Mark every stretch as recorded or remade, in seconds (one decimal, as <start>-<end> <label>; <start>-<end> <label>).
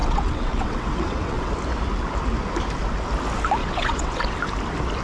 0.0-1.5 remade; 1.5-3.6 recorded; 3.6-4.4 remade; 4.4-5.0 recorded